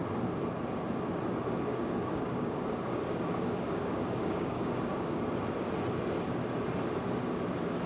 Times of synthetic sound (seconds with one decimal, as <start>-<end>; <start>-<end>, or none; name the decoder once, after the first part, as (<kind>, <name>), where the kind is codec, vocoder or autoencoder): 1.7-5.3 (codec, DAC)